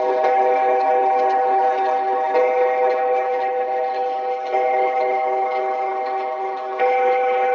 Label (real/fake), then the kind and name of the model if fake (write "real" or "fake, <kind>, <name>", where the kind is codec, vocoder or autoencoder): fake, codec, HILCodec